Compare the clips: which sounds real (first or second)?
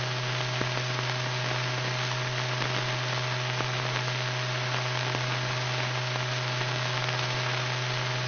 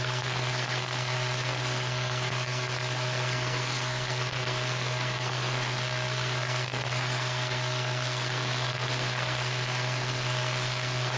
first